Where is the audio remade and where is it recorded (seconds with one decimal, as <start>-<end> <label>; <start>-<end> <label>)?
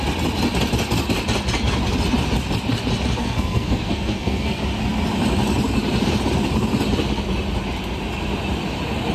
0.0-3.2 recorded; 3.2-4.6 remade; 4.6-9.1 recorded